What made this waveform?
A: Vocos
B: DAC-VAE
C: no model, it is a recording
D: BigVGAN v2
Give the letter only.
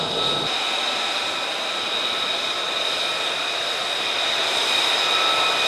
C